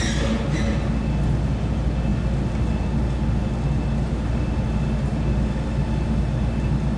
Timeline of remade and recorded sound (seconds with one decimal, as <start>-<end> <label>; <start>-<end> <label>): 0.0-7.0 recorded